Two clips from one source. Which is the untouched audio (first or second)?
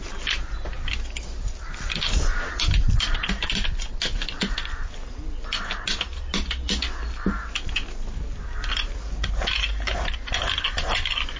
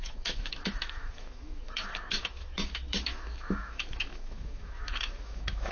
first